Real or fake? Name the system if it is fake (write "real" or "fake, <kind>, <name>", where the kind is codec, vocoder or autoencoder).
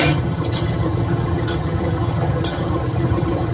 fake, vocoder, HiFi-GAN